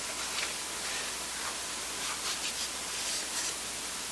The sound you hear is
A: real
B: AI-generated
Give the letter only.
A